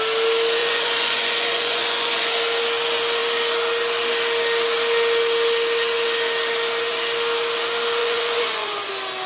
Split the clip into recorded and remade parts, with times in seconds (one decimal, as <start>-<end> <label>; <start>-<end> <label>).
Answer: 0.0-0.6 recorded; 0.6-2.3 remade; 2.3-8.0 recorded; 8.0-8.9 remade; 8.9-9.3 recorded